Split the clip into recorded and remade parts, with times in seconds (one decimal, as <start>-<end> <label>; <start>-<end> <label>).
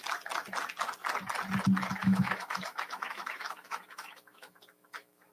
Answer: 0.0-2.0 recorded; 2.0-5.3 remade